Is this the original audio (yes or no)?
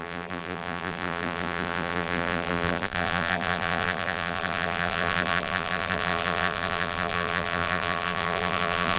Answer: no